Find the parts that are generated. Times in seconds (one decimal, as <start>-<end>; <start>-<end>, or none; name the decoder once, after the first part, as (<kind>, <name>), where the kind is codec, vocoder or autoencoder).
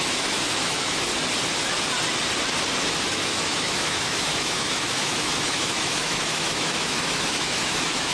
0.0-1.1 (autoencoder, DAC-VAE); 3.1-8.1